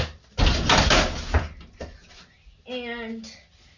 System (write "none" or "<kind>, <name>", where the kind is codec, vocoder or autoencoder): none